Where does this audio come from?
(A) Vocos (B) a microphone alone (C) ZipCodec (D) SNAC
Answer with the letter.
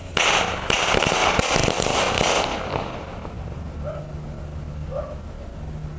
B